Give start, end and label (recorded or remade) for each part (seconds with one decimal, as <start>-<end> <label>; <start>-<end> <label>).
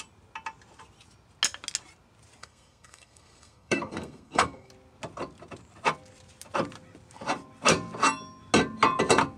0.0-2.4 recorded; 2.4-4.7 remade; 4.7-9.4 recorded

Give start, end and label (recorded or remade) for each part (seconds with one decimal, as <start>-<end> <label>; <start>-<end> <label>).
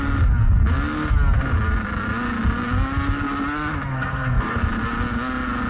0.0-3.9 recorded; 3.9-4.6 remade; 4.6-5.7 recorded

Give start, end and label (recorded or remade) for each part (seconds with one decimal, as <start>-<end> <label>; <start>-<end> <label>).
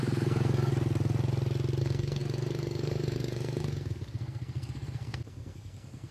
0.0-0.7 remade; 0.7-1.8 recorded; 1.8-6.1 remade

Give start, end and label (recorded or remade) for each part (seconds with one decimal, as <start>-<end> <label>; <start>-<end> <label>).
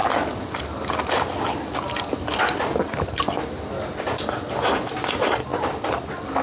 0.0-6.4 recorded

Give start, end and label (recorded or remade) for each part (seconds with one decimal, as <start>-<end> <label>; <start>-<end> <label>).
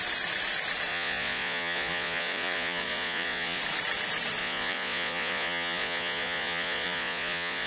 0.0-0.9 recorded; 0.9-3.6 remade; 3.6-4.4 recorded; 4.4-7.7 remade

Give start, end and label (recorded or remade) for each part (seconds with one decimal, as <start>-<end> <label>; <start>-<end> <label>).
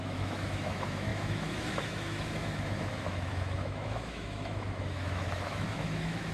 0.0-6.3 remade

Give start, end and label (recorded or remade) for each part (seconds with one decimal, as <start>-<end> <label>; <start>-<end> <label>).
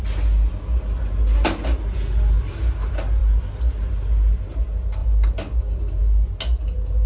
0.0-5.0 recorded; 5.0-5.6 remade; 5.6-7.1 recorded